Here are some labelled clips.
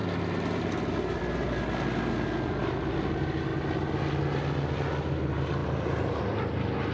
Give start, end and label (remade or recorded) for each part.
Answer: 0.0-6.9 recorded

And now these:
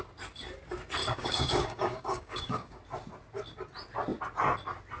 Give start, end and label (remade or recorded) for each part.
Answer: 0.0-1.0 recorded; 1.0-2.8 remade; 2.8-5.0 recorded

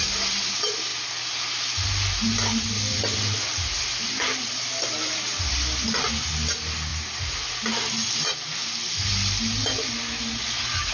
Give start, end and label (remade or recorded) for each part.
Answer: 0.0-10.9 recorded

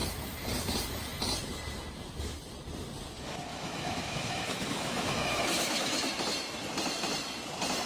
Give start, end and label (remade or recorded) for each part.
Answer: 0.0-3.5 recorded; 3.5-6.1 remade; 6.1-7.9 recorded

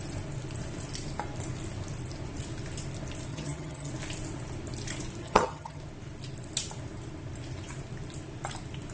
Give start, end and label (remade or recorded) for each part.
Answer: 0.0-3.3 recorded; 3.3-3.9 remade; 3.9-5.2 recorded; 5.2-5.8 remade; 5.8-8.9 recorded

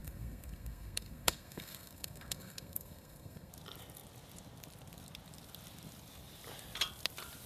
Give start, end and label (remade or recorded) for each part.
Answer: 0.0-3.5 remade; 3.5-7.5 recorded

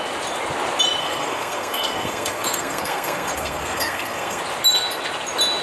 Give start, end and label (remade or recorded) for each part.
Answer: 0.0-1.0 recorded; 1.0-4.4 remade; 4.4-5.6 recorded

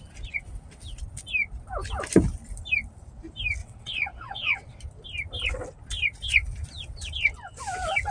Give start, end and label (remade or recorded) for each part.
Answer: 0.0-3.6 recorded; 3.6-4.8 remade; 4.8-8.1 recorded